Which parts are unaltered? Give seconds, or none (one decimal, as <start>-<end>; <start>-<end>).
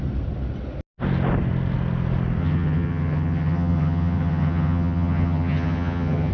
0.0-2.4